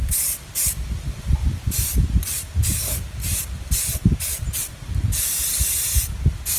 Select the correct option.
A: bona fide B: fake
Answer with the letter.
B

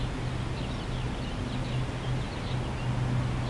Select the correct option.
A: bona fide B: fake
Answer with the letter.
A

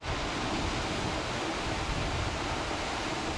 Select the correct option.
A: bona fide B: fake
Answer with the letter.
A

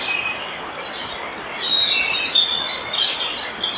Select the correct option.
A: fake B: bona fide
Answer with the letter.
B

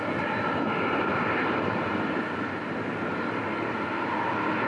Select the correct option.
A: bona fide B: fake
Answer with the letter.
A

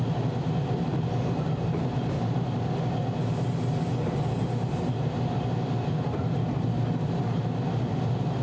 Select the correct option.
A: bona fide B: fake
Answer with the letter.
A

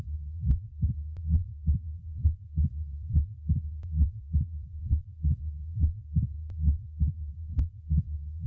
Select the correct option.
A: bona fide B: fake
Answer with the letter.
B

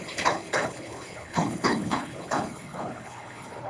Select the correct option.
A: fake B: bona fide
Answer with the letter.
A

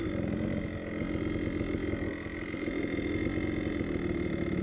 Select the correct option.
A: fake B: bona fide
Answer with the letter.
B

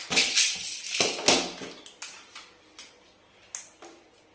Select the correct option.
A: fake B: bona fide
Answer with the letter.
B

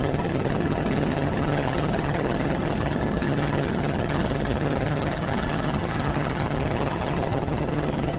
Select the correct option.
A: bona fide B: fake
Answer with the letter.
B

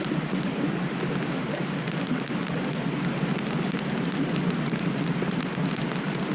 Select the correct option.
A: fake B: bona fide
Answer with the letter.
B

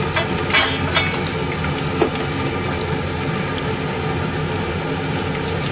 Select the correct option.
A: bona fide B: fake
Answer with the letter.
A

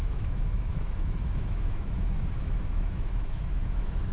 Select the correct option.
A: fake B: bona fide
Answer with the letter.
A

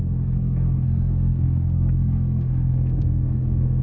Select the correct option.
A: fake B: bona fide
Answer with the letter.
A